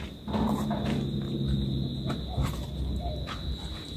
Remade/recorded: recorded